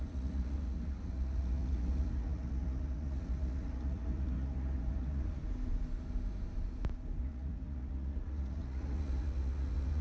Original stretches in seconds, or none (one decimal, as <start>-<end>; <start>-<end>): 5.4-7.2